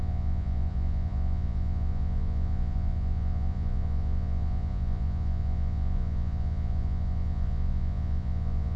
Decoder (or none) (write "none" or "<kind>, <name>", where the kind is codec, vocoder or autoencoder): vocoder, Vocos